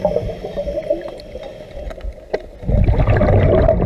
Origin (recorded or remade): recorded